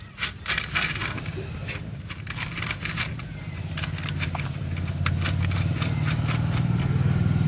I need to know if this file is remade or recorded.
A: recorded